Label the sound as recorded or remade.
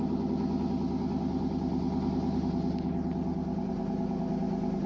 recorded